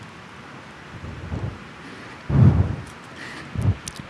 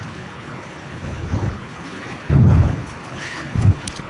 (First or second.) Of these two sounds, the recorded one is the first